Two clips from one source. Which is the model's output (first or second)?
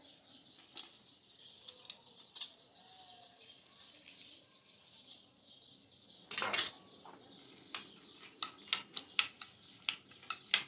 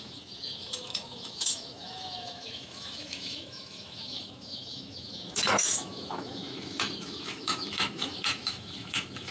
second